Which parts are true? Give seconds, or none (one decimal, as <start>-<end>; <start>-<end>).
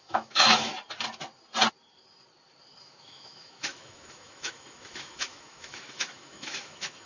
0.7-2.8